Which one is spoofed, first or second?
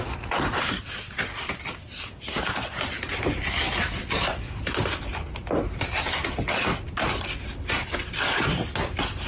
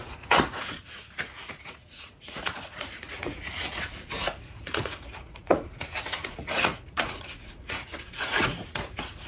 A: second